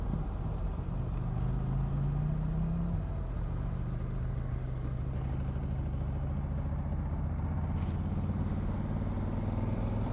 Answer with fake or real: real